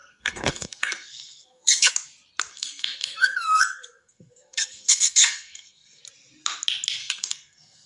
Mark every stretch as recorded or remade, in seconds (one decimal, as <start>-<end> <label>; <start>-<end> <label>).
0.0-1.9 remade; 1.9-2.5 recorded; 2.5-6.0 remade; 6.0-7.0 recorded; 7.0-7.9 remade